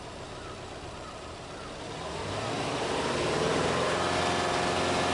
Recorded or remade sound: recorded